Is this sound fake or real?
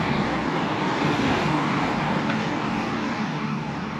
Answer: fake